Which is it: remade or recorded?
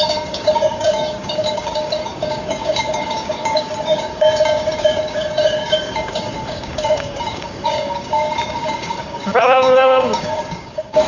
remade